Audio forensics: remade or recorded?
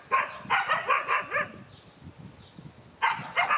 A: recorded